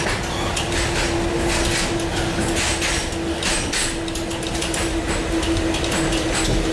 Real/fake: real